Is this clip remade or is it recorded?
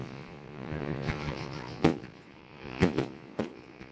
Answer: remade